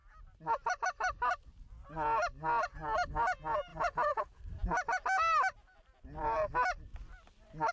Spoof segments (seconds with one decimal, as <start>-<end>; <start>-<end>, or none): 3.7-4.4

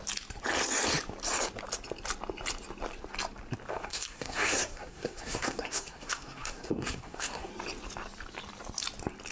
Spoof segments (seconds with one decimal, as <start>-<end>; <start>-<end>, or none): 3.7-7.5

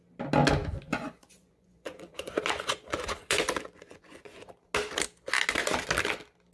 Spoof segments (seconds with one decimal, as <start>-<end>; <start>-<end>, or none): 0.6-4.5

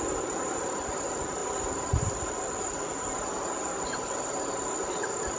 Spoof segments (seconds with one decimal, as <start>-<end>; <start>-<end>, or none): none

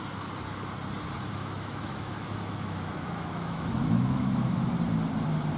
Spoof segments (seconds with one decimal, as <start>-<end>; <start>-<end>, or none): 1.3-4.7